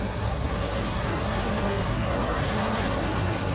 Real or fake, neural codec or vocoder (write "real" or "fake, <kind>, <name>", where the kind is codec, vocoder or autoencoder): fake, codec, SNAC